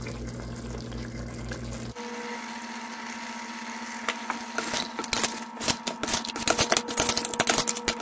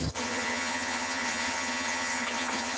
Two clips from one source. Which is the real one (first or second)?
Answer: first